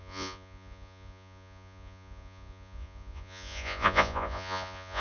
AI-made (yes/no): yes